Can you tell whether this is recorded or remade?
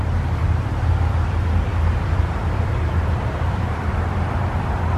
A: remade